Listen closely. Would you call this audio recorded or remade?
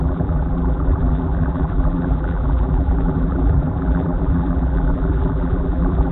remade